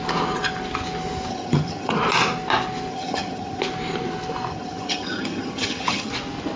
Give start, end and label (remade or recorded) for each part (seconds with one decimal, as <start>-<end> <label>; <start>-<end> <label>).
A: 0.0-1.3 recorded; 1.3-2.0 remade; 2.0-2.9 recorded; 2.9-3.6 remade; 3.6-4.5 recorded; 4.5-6.1 remade; 6.1-6.6 recorded